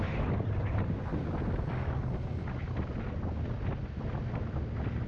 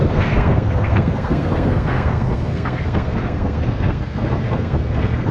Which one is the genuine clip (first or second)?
first